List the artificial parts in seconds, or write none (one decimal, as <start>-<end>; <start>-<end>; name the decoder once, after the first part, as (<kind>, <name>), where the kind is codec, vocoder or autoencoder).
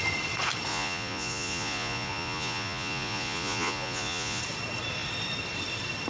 0.7-4.4 (vocoder, Vocos)